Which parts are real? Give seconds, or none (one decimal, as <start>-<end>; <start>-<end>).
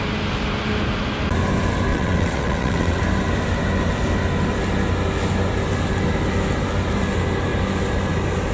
0.0-1.9; 3.0-8.5